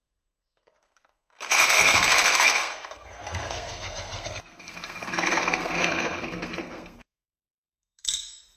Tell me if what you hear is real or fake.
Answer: fake